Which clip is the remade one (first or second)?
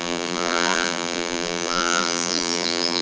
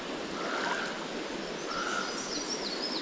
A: first